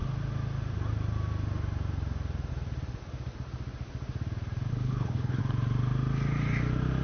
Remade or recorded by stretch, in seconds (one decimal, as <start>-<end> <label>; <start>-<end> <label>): 0.0-4.7 recorded; 4.7-5.4 remade; 5.4-7.0 recorded